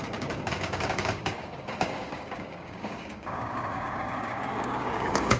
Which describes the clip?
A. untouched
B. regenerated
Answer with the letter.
B